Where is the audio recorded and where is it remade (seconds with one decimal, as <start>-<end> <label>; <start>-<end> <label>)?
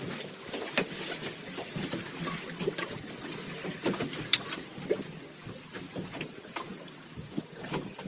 0.0-8.1 recorded